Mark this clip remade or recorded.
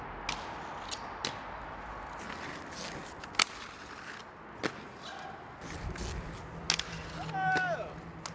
recorded